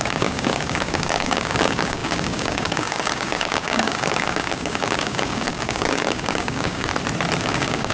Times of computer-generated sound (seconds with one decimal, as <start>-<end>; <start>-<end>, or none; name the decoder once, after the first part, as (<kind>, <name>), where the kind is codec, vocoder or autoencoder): 0.0-6.9 (codec, DAC); 7.4-7.9